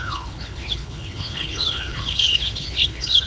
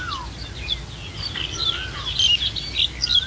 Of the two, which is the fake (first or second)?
first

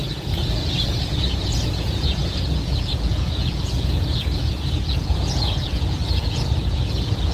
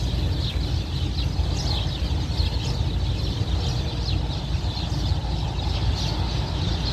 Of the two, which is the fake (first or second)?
first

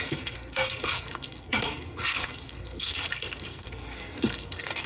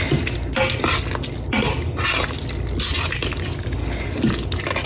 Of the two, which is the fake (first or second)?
first